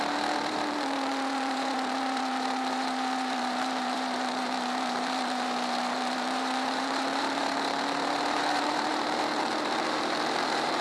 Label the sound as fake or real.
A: fake